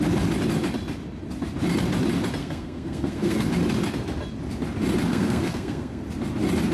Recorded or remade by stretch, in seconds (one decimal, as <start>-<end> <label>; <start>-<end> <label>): 0.0-2.4 recorded; 2.4-3.5 remade; 3.5-5.1 recorded; 5.1-6.0 remade; 6.0-6.7 recorded